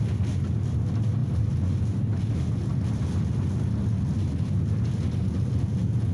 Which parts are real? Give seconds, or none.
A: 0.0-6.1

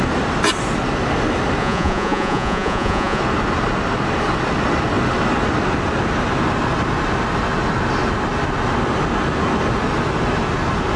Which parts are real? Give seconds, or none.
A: 0.0-1.6; 3.2-11.0

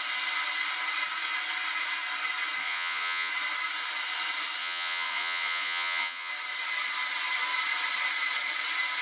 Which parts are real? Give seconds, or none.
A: 0.0-2.6; 3.3-4.6; 6.3-9.0

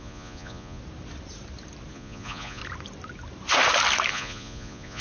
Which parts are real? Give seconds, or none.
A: 0.8-1.9; 2.6-4.1

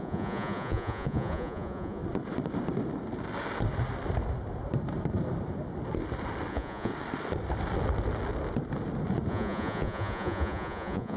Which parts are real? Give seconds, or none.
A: 2.0-6.5; 6.9-9.3

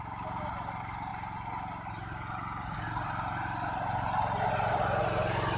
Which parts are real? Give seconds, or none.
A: 0.0-5.6

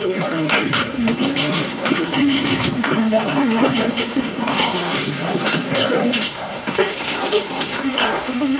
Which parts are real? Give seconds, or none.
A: none